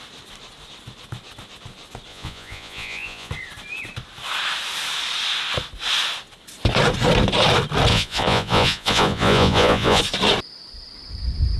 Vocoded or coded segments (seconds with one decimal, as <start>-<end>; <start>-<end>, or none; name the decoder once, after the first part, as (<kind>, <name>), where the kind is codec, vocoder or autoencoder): 2.1-3.3 (vocoder, Vocos); 7.9-10.0